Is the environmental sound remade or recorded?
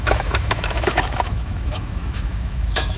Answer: remade